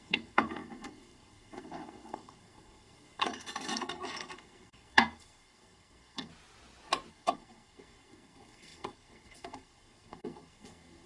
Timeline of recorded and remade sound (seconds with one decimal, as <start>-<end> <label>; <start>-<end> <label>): 0.0-6.3 remade; 6.3-7.1 recorded; 7.1-11.1 remade